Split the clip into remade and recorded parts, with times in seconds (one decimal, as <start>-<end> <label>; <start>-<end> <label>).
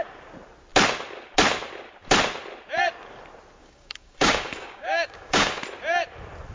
0.0-3.6 recorded; 3.6-5.6 remade; 5.6-6.5 recorded